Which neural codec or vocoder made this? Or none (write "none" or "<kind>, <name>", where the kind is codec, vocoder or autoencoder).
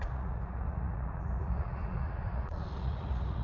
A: vocoder, Vocos